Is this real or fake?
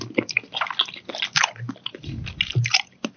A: real